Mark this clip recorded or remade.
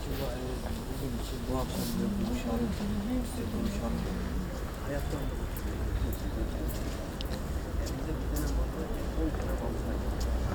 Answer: recorded